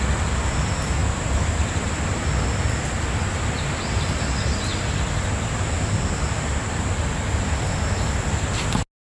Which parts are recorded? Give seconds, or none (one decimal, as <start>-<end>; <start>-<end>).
0.0-9.2